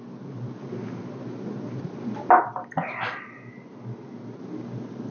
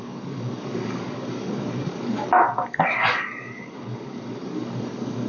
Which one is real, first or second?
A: first